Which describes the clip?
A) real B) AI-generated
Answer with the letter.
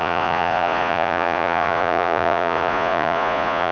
B